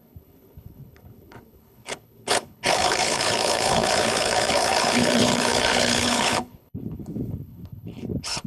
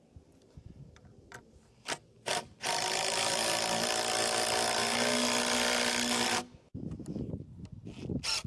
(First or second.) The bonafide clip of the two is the second